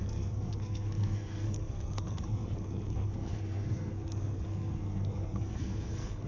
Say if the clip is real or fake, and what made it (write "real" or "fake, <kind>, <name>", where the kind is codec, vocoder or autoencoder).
fake, codec, SNAC